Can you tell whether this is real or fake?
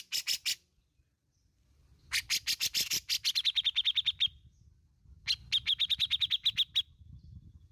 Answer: real